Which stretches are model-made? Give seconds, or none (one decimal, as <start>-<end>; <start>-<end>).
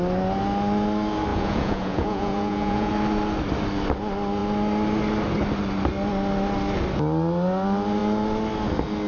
1.3-2.9